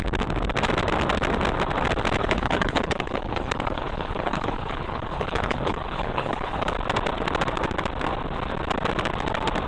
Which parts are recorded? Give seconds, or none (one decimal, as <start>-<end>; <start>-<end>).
0.0-2.2; 6.7-9.7